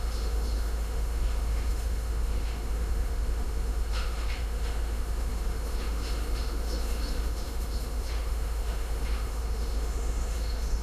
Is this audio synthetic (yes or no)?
yes